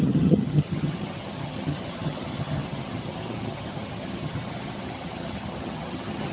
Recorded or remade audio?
remade